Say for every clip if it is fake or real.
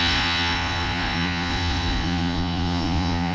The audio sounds fake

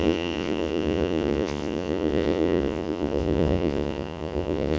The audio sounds fake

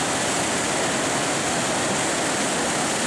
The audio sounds real